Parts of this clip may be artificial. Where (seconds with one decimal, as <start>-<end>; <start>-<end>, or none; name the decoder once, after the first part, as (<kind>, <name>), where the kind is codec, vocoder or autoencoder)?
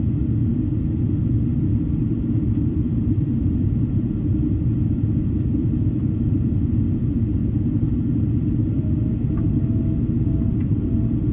1.5-6.7 (vocoder, BigVGAN v2); 7.4-8.5